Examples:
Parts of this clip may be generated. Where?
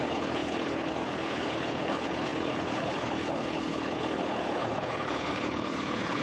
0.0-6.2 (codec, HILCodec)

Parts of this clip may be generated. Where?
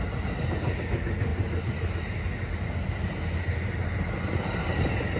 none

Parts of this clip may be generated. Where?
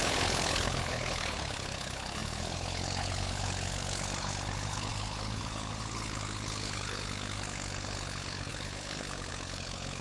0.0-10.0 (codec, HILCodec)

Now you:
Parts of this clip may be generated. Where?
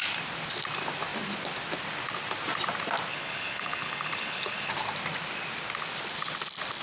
3.1-4.7 (codec, HILCodec)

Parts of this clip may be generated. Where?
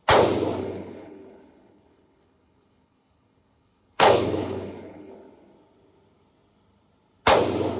0.6-5.1 (codec, HILCodec)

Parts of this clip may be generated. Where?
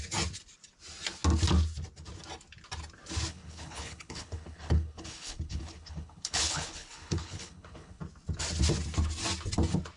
3.3-8.0 (codec, HILCodec)